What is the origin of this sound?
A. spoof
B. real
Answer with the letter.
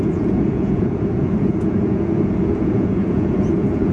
A